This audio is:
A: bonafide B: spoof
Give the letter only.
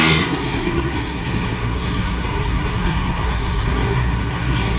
B